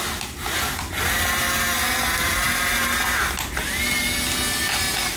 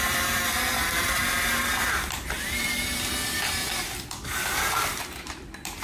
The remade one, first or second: second